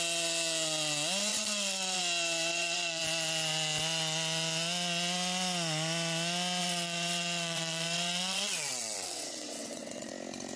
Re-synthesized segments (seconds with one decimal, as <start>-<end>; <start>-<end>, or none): 1.3-2.0; 2.5-3.0; 6.6-10.1